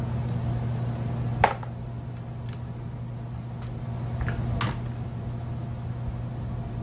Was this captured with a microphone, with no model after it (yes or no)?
yes